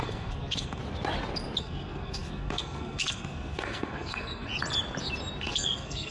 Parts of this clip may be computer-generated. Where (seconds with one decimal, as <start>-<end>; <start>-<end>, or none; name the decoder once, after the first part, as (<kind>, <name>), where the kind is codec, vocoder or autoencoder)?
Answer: 0.0-0.8 (codec, SNAC); 1.6-4.5; 5.4-6.1